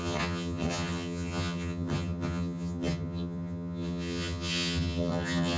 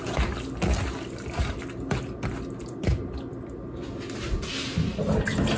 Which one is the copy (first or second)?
first